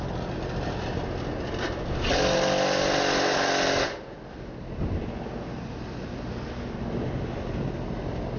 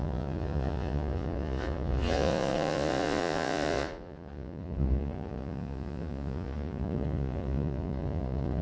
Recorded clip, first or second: first